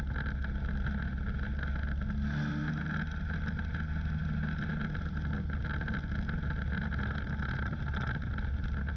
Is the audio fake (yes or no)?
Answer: no